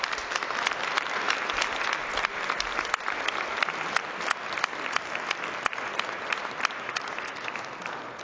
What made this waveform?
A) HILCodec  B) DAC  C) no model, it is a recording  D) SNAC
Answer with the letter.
C